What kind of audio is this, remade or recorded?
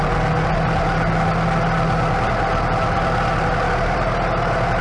recorded